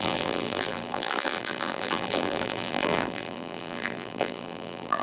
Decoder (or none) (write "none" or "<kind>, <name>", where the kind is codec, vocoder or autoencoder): vocoder, BigVGAN v2